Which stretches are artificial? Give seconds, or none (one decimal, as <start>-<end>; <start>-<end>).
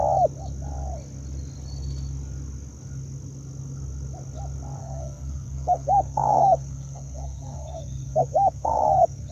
4.8-9.3